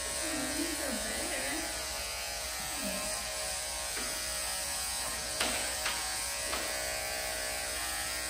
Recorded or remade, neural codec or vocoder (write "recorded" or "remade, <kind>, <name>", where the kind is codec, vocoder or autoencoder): remade, vocoder, Vocos